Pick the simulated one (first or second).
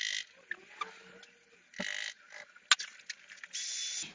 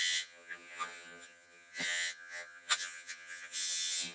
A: second